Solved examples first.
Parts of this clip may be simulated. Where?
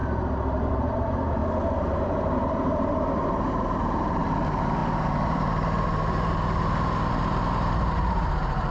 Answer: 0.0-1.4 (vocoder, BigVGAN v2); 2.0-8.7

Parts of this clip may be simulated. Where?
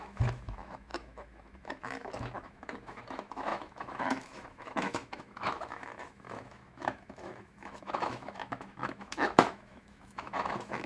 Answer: 0.0-10.9 (autoencoder, DAC-VAE)